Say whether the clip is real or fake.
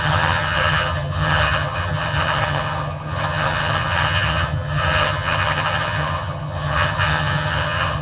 fake